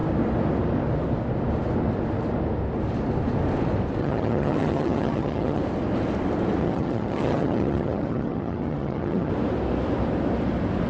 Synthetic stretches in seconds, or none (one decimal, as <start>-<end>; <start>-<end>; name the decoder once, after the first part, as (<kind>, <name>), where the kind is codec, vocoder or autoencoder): 4.0-5.6 (vocoder, HiFi-GAN); 6.6-9.3